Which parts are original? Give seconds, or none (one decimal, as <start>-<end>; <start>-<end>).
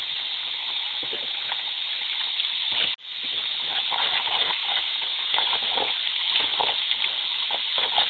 0.0-4.6; 5.6-8.1